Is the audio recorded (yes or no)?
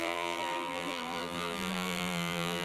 no